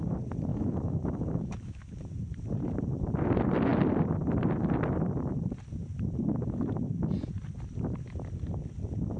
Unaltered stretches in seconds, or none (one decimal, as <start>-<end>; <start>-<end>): 0.0-0.5; 2.0-9.2